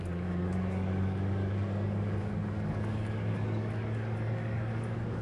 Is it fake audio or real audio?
fake